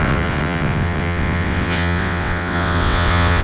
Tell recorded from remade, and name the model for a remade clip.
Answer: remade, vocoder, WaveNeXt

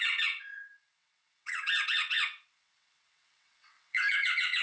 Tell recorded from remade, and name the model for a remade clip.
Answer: remade, vocoder, WaveNeXt